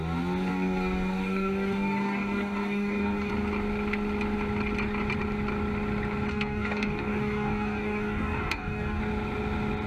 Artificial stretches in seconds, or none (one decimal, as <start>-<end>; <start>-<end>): 0.5-3.3; 6.3-9.0